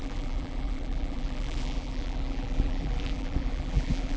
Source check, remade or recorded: remade